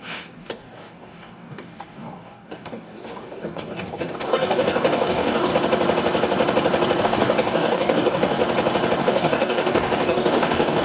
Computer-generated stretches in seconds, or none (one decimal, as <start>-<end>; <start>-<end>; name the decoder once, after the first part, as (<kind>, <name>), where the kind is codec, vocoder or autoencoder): 0.0-5.5 (codec, DAC); 7.0-8.4; 9.0-10.8